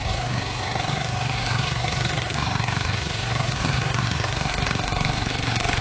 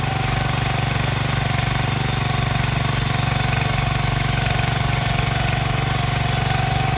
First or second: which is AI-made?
first